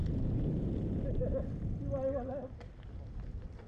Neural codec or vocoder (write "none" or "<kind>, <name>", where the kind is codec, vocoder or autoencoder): none